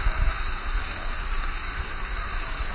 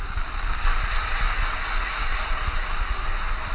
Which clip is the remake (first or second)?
first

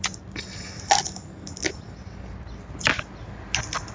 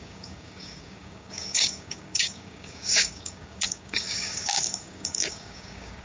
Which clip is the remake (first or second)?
second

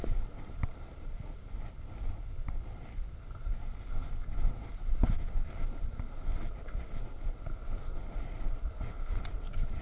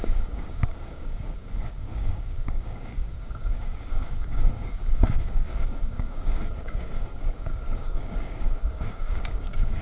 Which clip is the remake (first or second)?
second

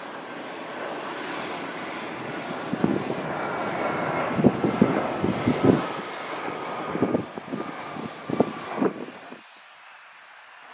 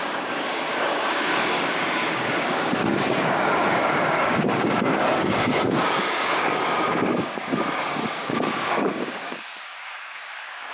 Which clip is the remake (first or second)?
second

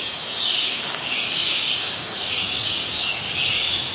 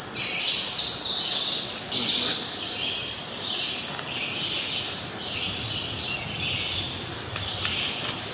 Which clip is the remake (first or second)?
first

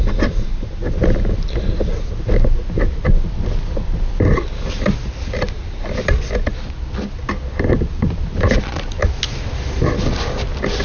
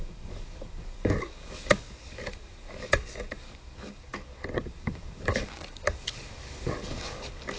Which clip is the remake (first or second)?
second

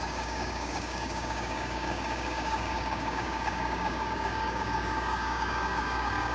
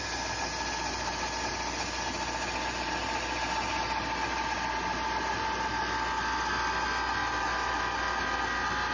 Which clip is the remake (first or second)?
first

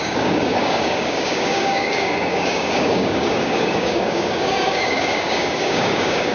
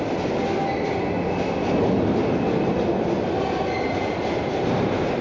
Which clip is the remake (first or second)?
first